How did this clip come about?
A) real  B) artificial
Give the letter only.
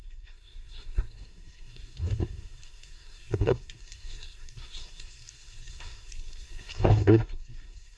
B